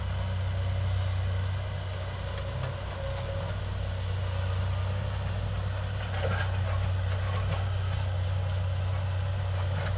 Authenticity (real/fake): real